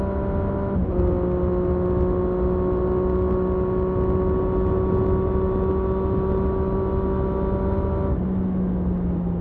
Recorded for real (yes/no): yes